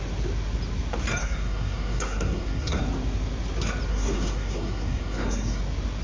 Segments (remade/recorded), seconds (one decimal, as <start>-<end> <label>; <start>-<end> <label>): 0.0-1.2 recorded; 1.2-2.8 remade; 2.8-3.9 recorded; 3.9-5.6 remade; 5.6-6.0 recorded